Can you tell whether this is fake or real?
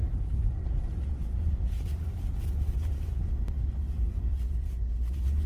real